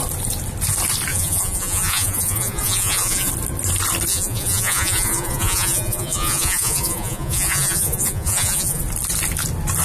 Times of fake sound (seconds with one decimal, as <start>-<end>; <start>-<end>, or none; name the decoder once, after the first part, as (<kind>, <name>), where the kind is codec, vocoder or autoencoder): 1.1-3.3 (vocoder, Vocos); 4.1-8.8

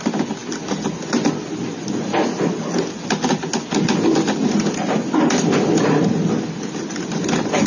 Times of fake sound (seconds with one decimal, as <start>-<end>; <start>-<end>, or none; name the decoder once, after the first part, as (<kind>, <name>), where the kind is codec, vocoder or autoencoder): none

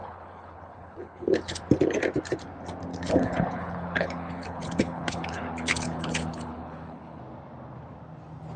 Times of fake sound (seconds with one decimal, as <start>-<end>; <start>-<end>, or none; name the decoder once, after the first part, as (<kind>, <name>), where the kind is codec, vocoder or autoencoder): 0.0-1.6 (codec, HILCodec); 2.9-7.2

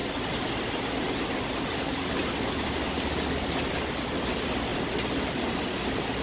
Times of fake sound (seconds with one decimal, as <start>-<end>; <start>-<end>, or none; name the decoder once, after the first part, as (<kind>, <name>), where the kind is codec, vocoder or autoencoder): none

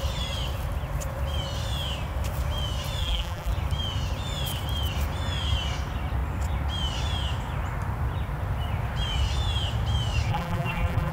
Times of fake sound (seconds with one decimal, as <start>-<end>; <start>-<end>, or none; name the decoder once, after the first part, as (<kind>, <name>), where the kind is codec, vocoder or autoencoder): 3.0-3.5 (vocoder, BigVGAN v2); 10.3-11.1

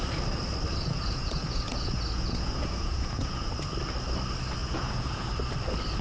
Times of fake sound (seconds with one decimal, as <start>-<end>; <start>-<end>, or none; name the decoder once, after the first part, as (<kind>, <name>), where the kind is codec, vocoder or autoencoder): 0.7-3.5 (vocoder, Vocos); 4.6-5.3

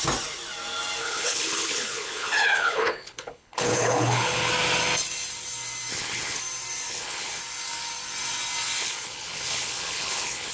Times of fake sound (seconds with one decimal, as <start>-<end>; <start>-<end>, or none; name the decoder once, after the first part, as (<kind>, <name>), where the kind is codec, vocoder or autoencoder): 1.0-4.5 (codec, HILCodec); 5.9-6.4; 6.9-7.4; 8.8-10.5